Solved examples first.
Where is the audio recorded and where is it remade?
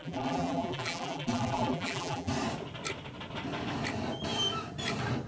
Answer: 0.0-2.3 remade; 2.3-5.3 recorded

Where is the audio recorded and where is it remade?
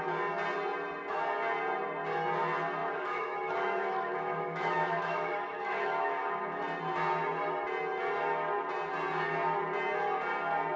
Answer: 0.0-2.8 recorded; 2.8-6.6 remade; 6.6-10.8 recorded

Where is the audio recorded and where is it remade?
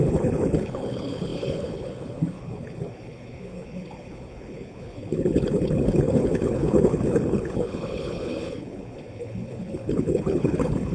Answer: 0.0-10.9 remade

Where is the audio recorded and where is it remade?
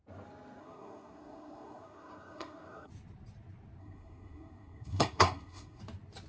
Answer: 0.0-0.6 recorded; 0.6-2.9 remade; 2.9-3.8 recorded; 3.8-5.8 remade; 5.8-6.3 recorded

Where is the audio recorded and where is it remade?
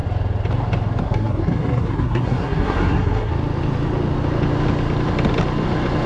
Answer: 0.0-1.0 recorded; 1.0-3.3 remade; 3.3-6.1 recorded